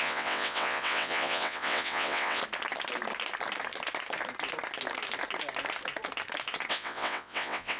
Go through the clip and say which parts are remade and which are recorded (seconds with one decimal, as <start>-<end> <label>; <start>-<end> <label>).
0.0-2.4 remade; 2.4-6.7 recorded; 6.7-7.8 remade